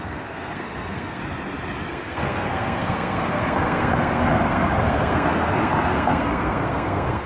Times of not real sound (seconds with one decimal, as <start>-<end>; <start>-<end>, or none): 0.0-1.2; 1.9-7.3